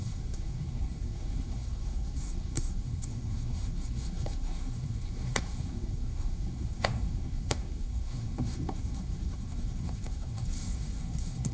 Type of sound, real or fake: fake